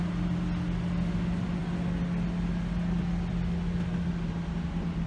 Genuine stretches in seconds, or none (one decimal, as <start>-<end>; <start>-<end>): 0.0-5.1